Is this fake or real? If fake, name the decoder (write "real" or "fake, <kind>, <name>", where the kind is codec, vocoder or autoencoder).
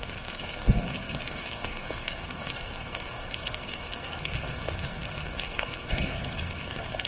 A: fake, codec, SNAC